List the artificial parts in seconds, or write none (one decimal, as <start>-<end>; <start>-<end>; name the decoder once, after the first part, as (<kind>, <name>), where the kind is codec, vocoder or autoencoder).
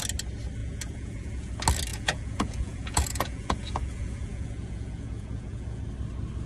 0.6-1.5 (vocoder, Vocos); 1.9-5.8